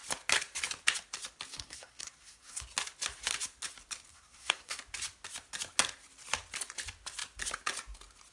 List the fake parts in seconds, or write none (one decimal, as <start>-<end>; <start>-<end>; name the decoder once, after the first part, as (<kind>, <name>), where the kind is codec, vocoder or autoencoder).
1.5-2.6 (codec, SNAC); 4.1-4.8